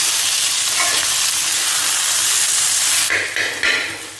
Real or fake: real